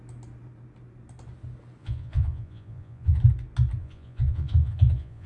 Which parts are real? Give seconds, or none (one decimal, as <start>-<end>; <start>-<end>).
0.0-1.8; 3.2-3.8